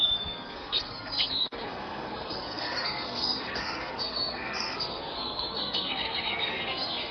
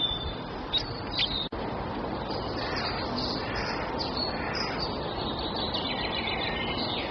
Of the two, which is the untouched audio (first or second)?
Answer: second